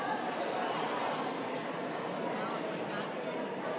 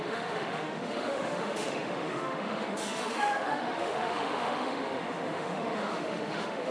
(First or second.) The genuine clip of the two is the first